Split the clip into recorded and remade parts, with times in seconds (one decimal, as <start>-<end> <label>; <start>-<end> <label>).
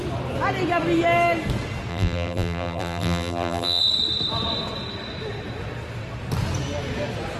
0.0-1.9 recorded; 1.9-3.8 remade; 3.8-7.4 recorded